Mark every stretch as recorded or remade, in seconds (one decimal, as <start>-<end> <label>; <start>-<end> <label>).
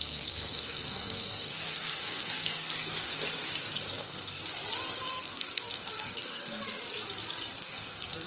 0.0-3.1 remade; 3.1-4.0 recorded; 4.0-4.4 remade; 4.4-5.1 recorded; 5.1-6.6 remade; 6.6-7.6 recorded; 7.6-8.3 remade